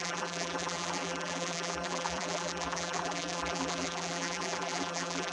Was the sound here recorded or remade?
remade